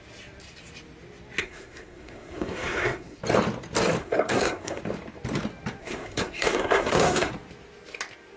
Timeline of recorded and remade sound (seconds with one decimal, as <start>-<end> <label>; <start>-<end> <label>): 0.0-1.4 recorded; 1.4-3.2 remade; 3.2-4.0 recorded; 4.0-4.8 remade; 4.8-5.8 recorded; 5.8-7.3 remade; 7.3-8.4 recorded